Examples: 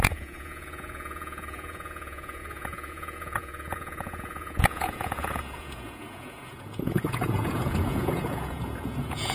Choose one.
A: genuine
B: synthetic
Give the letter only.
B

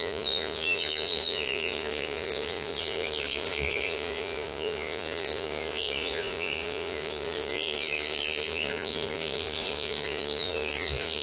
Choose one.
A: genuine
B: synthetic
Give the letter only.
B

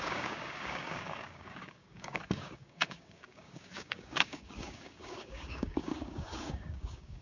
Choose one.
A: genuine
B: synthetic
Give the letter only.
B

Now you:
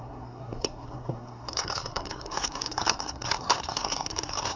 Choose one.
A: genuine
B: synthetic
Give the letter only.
B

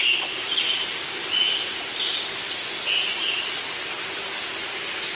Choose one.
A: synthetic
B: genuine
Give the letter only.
B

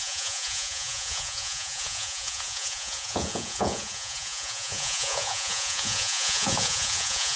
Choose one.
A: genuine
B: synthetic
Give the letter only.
B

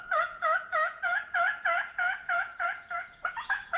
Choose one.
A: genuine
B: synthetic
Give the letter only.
B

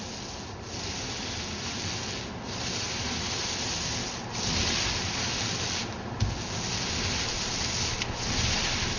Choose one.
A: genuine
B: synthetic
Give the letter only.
A